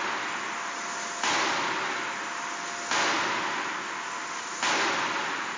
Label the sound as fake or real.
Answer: real